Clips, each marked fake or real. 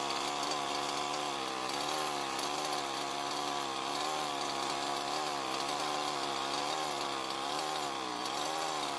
real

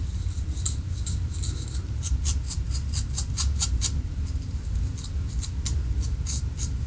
real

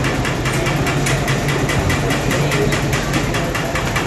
real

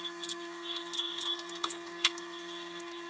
fake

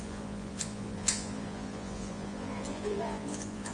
fake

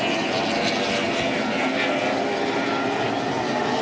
real